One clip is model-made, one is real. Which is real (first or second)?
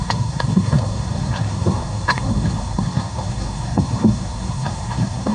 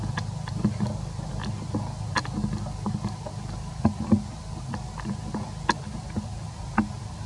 second